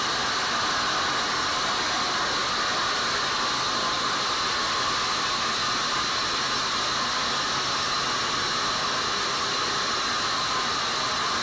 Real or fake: real